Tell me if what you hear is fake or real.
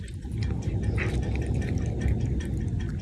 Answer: fake